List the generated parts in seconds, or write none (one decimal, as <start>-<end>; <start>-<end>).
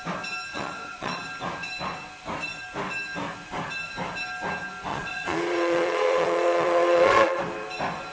0.5-1.2; 4.9-7.4